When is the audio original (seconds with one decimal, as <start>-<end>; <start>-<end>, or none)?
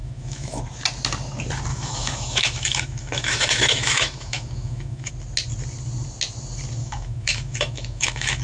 0.6-1.7; 5.1-6.8